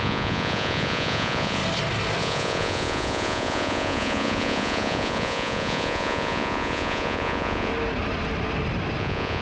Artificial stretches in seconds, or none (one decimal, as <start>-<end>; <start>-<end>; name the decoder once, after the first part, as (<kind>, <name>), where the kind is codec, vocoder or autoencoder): 0.0-1.6 (vocoder, Vocos); 2.2-7.7; 9.0-9.4